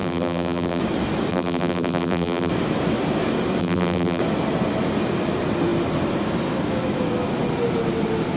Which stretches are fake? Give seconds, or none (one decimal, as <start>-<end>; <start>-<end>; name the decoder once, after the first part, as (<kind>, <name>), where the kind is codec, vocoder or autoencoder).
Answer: 0.0-0.8 (vocoder, BigVGAN v2); 1.3-2.5; 3.6-4.2